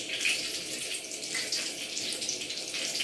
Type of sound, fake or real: real